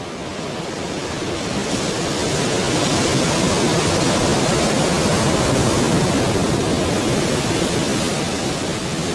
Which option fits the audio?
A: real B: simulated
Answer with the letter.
A